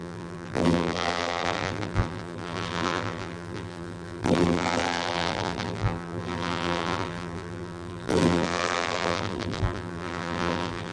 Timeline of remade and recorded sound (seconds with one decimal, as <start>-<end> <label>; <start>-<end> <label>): 0.0-10.9 remade